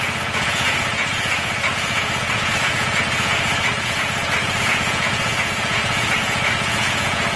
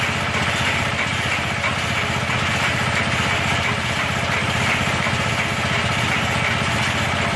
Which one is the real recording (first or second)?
second